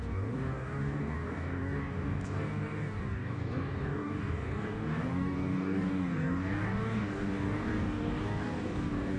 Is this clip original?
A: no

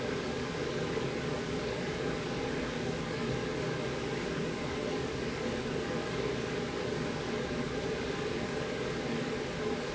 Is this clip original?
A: no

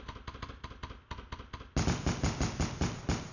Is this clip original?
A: yes